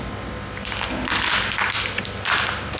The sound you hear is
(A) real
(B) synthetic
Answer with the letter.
A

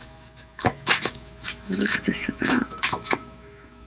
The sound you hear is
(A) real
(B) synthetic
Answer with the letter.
B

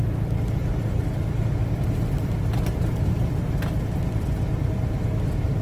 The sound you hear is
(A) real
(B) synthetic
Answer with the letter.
A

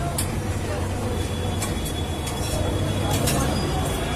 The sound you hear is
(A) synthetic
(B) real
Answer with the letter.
B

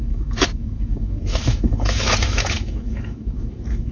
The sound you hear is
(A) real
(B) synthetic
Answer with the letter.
B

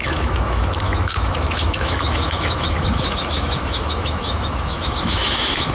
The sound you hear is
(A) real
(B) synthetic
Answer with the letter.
B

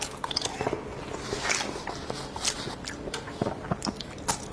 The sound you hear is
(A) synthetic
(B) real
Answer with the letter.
B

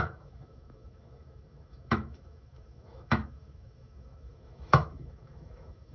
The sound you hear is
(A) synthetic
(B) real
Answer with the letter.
A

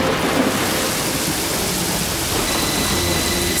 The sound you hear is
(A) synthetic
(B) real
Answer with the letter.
B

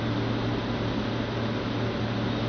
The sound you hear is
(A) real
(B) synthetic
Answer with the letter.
A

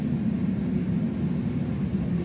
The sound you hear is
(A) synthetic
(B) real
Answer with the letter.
B